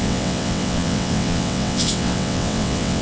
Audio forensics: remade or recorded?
remade